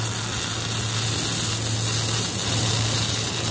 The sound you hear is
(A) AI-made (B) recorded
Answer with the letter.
B